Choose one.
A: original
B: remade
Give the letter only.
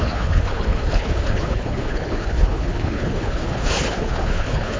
B